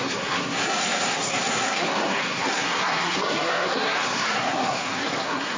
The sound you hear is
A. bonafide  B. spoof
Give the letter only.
B